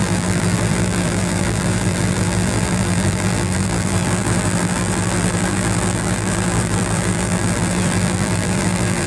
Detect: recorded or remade remade